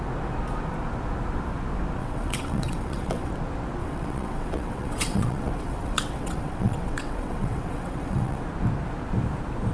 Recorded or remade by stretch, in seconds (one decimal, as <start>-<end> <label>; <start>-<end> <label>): 0.0-2.0 recorded; 2.0-3.3 remade; 3.3-3.8 recorded; 3.8-8.4 remade; 8.4-9.7 recorded